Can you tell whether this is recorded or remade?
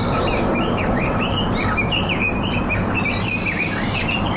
remade